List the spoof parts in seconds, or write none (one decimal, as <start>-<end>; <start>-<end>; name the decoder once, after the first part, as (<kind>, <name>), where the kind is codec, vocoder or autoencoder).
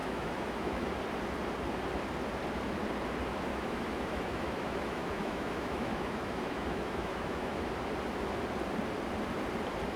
0.0-0.9 (autoencoder, DAC-VAE); 3.5-7.7